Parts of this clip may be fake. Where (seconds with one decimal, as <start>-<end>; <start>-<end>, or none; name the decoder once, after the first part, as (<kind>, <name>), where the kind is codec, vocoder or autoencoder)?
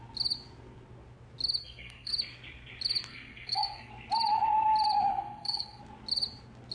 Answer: 1.6-2.1 (codec, SNAC); 3.1-3.9; 5.1-5.8